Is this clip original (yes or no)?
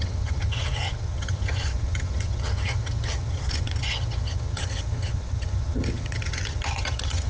no